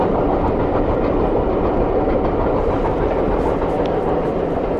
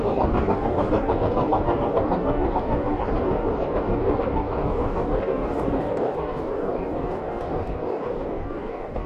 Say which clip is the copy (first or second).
second